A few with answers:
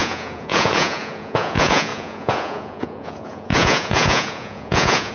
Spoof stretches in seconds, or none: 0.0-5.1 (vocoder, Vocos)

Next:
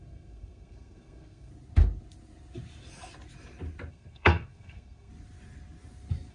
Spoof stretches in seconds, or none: 0.0-1.5 (codec, SNAC); 3.9-5.1

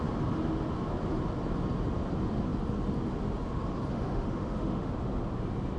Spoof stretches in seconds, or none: 3.9-4.9 (autoencoder, DAC-VAE)